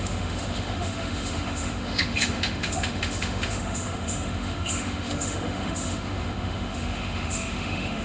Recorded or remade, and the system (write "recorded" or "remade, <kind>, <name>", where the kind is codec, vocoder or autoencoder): remade, autoencoder, DAC-VAE